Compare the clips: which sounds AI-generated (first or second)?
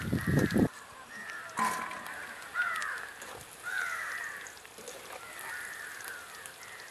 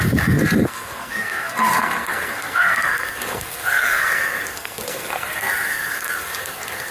second